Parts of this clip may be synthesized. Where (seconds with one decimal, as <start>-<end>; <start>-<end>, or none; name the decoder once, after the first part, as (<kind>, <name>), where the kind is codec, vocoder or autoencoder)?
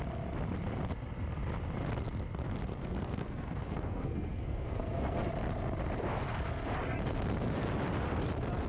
2.8-5.3 (codec, SNAC)